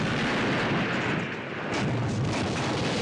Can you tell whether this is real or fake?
real